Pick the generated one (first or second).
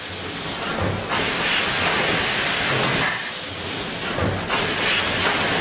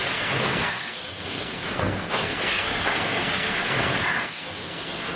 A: second